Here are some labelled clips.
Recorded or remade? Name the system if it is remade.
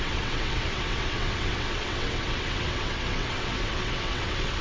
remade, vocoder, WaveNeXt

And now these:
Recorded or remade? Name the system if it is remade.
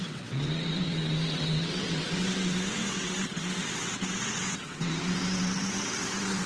remade, vocoder, WaveNeXt